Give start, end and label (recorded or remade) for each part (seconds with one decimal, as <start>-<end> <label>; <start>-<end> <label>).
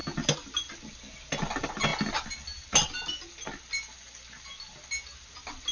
0.0-5.7 recorded